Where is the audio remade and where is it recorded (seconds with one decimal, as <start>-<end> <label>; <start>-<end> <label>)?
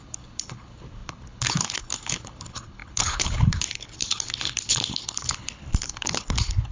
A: 0.0-6.7 remade